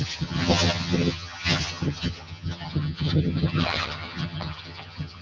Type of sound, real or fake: fake